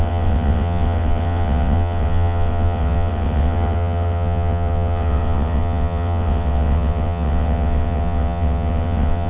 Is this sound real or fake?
fake